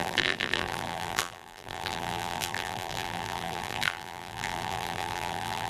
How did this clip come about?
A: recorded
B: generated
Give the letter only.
B